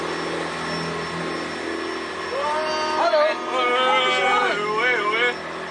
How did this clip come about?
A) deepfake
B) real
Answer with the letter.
B